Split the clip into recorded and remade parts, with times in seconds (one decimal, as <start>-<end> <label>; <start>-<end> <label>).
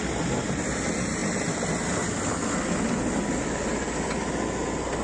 0.0-5.0 recorded